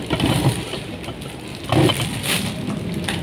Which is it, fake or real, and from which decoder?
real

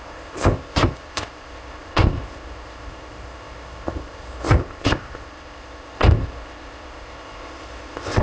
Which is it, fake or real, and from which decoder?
fake, codec, ZipCodec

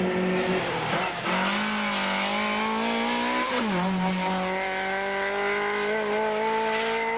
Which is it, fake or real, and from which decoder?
real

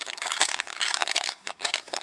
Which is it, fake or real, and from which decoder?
fake, codec, SNAC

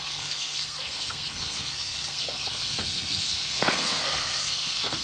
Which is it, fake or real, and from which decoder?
fake, codec, SNAC